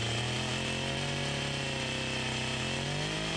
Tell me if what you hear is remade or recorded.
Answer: recorded